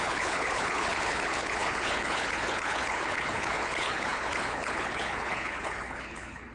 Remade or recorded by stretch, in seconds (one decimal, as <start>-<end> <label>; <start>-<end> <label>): 0.0-6.5 remade